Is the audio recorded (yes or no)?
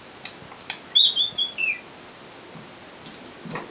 yes